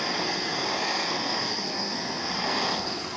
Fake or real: fake